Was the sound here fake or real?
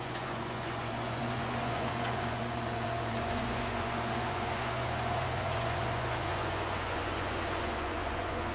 fake